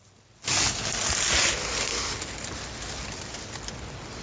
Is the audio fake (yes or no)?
no